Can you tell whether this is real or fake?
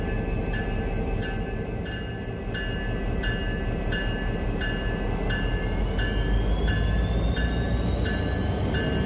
real